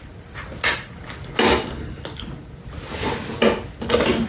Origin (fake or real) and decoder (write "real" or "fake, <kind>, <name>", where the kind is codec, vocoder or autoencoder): real